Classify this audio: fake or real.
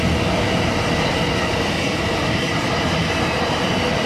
real